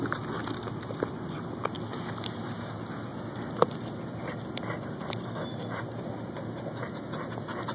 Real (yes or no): yes